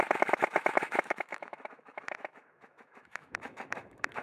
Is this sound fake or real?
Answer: fake